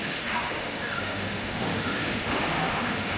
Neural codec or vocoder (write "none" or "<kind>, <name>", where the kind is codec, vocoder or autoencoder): autoencoder, DAC-VAE